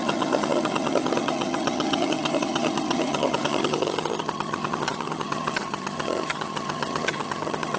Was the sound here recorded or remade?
remade